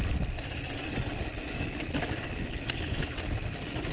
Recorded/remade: recorded